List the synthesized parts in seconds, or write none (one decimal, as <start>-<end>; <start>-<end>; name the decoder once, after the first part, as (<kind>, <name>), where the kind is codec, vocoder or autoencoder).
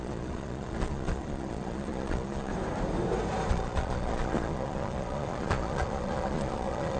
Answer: 0.0-2.5 (vocoder, Vocos); 3.5-7.0